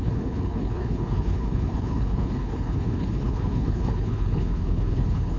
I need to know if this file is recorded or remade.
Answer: remade